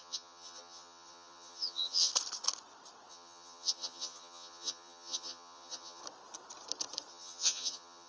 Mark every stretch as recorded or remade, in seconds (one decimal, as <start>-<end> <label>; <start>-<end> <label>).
0.0-2.1 remade; 2.1-3.1 recorded; 3.1-6.0 remade; 6.0-7.1 recorded; 7.1-8.1 remade